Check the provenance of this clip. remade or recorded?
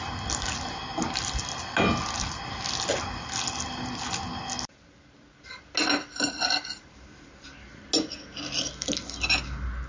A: recorded